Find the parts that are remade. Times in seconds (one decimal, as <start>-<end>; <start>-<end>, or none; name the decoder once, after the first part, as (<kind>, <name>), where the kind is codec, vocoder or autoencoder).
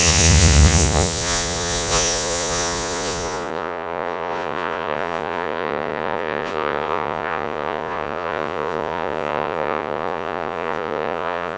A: 0.0-11.6 (vocoder, Vocos)